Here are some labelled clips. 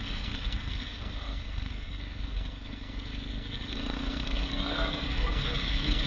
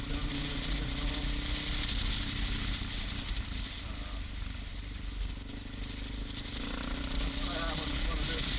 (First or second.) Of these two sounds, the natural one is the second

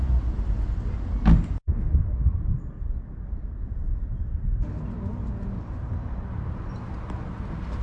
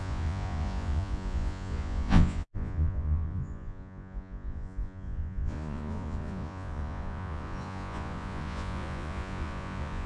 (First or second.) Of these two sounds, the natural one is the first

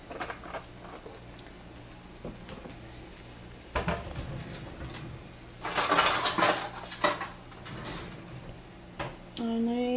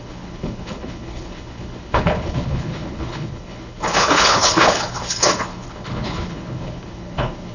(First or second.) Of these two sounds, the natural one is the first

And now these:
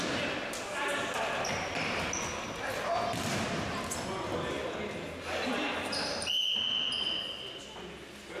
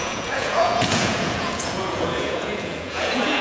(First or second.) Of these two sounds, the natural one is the first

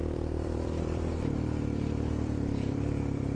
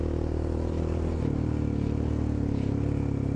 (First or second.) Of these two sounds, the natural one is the second